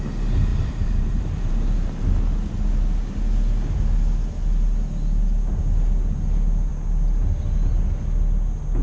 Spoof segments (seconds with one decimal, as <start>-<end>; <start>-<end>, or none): 0.5-2.1